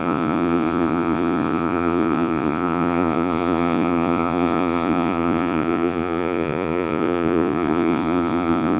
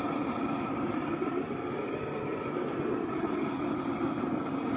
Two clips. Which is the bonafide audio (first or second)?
second